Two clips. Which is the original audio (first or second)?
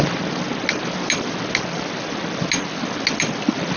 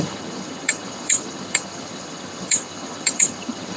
first